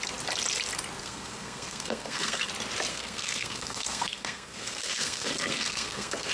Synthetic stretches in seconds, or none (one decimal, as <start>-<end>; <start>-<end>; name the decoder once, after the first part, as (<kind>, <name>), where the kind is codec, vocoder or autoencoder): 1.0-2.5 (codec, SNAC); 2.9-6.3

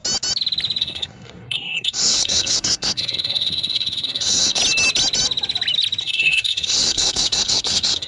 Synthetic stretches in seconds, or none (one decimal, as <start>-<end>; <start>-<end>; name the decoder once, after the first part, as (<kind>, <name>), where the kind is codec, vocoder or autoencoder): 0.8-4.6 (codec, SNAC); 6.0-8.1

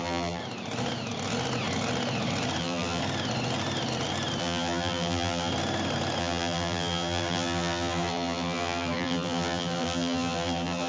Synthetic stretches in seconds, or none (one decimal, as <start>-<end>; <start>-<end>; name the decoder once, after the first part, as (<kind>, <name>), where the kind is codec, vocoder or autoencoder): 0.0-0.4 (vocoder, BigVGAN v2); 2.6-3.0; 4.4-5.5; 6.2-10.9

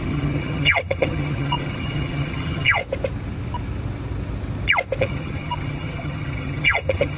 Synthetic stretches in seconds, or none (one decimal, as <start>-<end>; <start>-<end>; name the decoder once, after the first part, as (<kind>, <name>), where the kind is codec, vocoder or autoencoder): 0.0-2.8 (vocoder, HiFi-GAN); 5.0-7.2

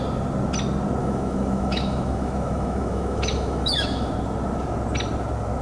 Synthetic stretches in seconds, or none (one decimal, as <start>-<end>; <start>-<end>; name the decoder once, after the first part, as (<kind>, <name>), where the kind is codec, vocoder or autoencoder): 1.0-4.1 (autoencoder, DAC-VAE)

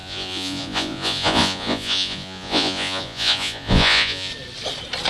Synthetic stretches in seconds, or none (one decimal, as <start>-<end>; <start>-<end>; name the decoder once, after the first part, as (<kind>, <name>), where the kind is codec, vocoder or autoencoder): 0.0-4.3 (vocoder, Vocos)

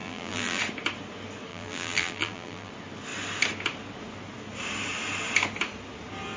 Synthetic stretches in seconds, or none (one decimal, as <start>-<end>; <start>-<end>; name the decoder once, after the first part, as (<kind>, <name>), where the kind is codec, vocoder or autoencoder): 0.0-0.6 (vocoder, BigVGAN v2); 1.5-2.7

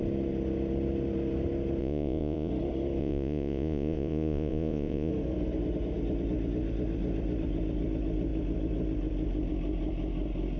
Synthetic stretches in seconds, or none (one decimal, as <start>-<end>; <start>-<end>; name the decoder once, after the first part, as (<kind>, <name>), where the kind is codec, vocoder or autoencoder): 1.8-2.5 (vocoder, Vocos); 3.0-5.1